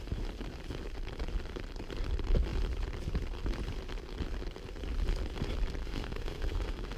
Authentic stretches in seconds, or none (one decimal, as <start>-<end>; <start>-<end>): 0.0-5.8